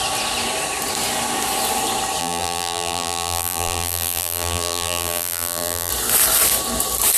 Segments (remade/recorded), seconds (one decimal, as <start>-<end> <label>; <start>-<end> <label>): 0.0-2.2 recorded; 2.2-5.9 remade; 5.9-7.2 recorded